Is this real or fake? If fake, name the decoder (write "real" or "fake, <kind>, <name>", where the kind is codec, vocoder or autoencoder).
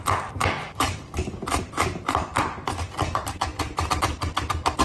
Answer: real